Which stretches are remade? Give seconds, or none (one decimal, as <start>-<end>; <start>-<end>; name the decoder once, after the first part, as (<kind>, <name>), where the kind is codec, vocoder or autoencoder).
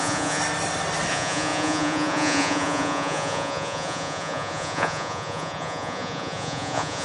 0.0-0.4 (vocoder, Vocos); 1.1-7.0